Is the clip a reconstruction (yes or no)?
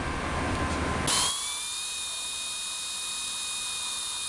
no